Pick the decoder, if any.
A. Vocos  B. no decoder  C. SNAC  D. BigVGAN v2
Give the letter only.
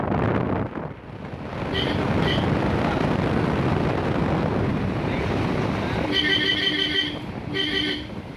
B